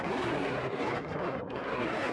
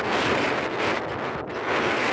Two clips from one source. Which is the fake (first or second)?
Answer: first